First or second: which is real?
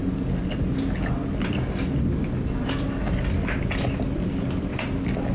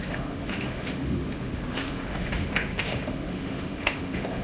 first